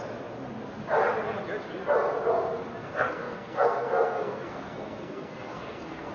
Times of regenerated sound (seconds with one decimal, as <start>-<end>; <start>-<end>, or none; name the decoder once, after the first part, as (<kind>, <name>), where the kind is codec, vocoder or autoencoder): 2.8-6.1 (codec, SNAC)